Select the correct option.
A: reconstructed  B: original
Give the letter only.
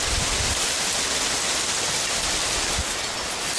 B